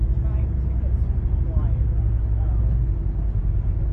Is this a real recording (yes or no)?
yes